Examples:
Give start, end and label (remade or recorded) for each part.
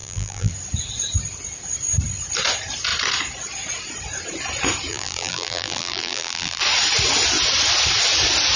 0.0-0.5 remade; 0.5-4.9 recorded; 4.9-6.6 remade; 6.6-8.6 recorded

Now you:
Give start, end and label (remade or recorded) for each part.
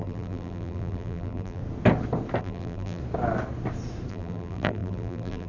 0.0-1.6 remade; 1.6-2.4 recorded; 2.4-3.0 remade; 3.0-4.1 recorded; 4.1-5.5 remade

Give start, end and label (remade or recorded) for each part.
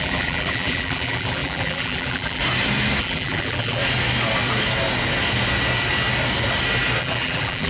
0.0-2.4 remade; 2.4-3.0 recorded; 3.0-3.8 remade; 3.8-7.0 recorded; 7.0-7.7 remade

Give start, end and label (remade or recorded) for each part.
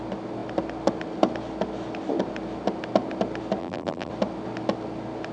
0.0-3.6 recorded; 3.6-4.1 remade; 4.1-5.3 recorded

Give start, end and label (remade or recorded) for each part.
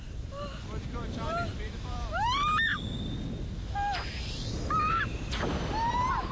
0.0-2.7 remade; 2.7-4.9 recorded; 4.9-6.3 remade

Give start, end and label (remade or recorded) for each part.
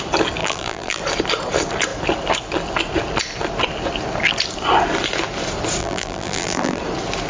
0.0-0.4 recorded; 0.4-1.0 remade; 1.0-5.8 recorded; 5.8-6.8 remade; 6.8-7.3 recorded